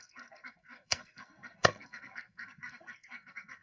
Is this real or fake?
fake